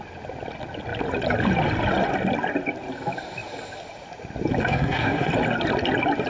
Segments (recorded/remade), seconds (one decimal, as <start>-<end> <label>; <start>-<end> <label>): 0.0-4.6 recorded; 4.6-5.3 remade; 5.3-6.3 recorded